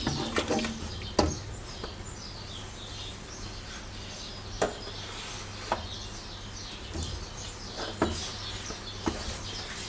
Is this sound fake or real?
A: real